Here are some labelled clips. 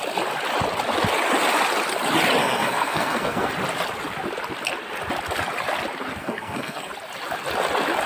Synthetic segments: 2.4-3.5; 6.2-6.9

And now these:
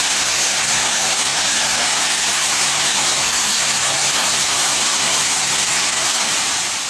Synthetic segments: 0.0-6.3

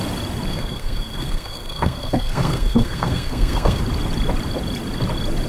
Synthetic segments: 0.5-3.8

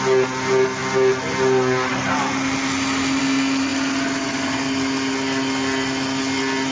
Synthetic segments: none